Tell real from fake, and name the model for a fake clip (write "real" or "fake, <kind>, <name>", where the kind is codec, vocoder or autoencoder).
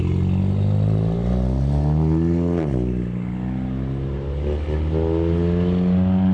real